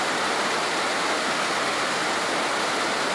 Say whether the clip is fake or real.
real